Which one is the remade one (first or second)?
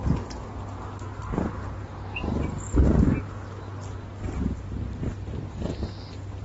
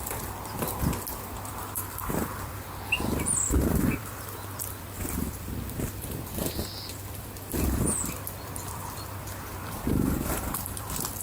second